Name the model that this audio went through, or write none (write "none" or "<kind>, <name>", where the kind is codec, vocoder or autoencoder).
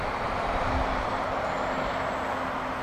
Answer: none